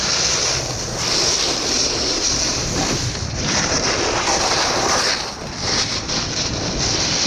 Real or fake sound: real